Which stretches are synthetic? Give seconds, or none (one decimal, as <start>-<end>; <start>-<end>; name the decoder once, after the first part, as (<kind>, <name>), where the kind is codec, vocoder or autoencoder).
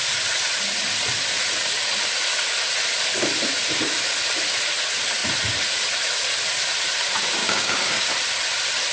7.4-8.1 (codec, DAC)